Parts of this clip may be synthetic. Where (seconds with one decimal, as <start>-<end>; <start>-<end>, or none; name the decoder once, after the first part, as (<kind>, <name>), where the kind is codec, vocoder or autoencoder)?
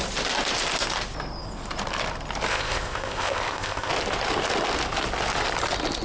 2.5-3.9 (codec, ZipCodec)